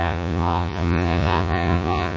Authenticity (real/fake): fake